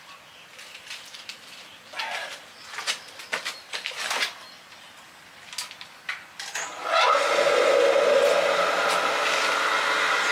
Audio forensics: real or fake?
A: real